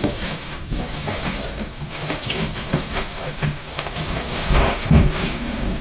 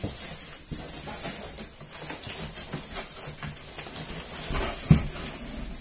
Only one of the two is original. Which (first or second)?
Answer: second